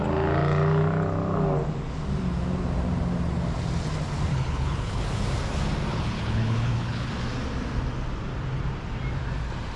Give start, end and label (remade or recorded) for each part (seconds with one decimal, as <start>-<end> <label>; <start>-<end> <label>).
0.0-4.3 recorded; 4.3-5.0 remade; 5.0-5.9 recorded; 5.9-7.1 remade; 7.1-9.8 recorded